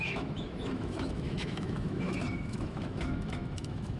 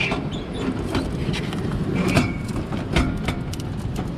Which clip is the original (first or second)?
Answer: second